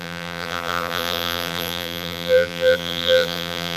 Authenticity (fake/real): fake